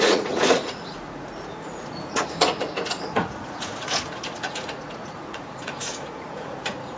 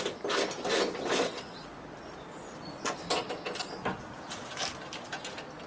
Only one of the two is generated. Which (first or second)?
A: first